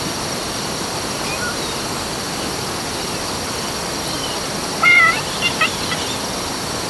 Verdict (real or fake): real